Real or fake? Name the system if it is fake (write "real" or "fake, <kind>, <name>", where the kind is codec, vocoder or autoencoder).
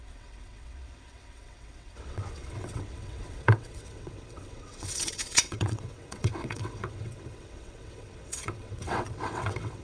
fake, vocoder, WaveNeXt